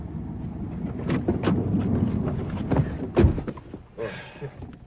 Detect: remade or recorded recorded